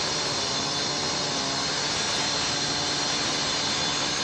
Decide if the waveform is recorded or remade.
recorded